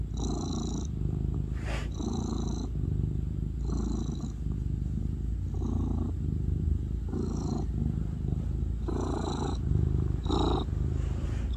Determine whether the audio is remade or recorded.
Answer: recorded